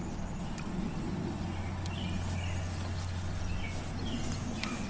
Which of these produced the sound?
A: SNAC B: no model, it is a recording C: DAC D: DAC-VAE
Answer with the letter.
B